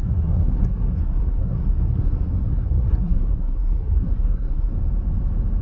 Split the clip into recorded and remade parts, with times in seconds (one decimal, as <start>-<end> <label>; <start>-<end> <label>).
0.0-4.7 remade; 4.7-5.6 recorded